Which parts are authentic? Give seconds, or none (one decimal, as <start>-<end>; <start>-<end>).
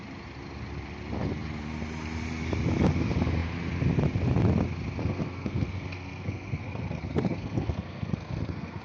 0.0-5.0